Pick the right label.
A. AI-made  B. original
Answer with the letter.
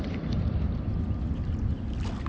B